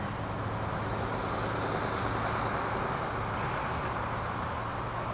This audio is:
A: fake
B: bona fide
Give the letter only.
B